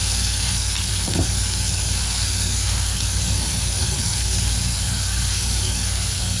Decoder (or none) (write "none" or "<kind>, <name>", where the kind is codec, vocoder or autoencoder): codec, SNAC